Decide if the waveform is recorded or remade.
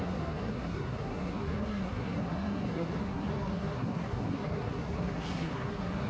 remade